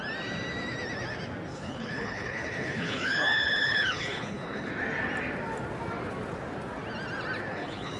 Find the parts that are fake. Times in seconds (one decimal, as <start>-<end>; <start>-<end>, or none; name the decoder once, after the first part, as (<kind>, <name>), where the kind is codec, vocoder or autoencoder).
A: 1.5-4.7 (codec, HILCodec); 7.5-8.0